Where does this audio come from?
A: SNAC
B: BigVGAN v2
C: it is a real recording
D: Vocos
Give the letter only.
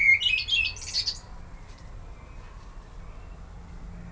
C